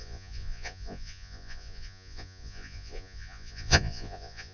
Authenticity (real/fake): fake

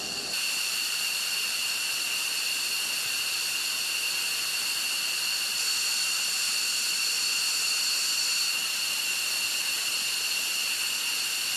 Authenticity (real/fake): real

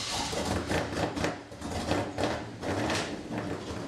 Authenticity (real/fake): real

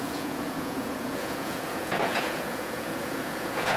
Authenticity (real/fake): fake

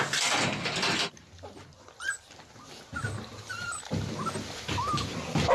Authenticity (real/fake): real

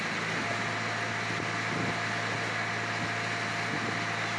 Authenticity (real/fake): real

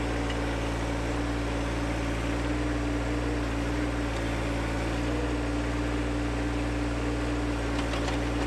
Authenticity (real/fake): real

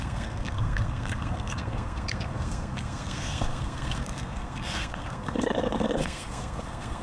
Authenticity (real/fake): fake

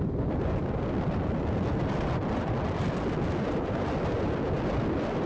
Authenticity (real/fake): real